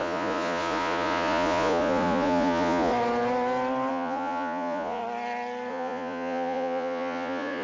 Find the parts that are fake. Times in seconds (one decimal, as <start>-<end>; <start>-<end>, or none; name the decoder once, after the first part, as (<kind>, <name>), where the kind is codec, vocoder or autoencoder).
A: 0.0-2.9 (vocoder, Vocos); 3.9-5.0; 5.7-7.6